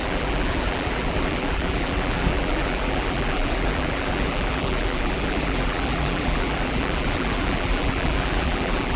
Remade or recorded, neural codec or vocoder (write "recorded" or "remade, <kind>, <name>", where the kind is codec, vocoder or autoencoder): remade, vocoder, BigVGAN v2